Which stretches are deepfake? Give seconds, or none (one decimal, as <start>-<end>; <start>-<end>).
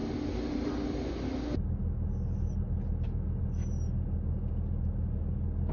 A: none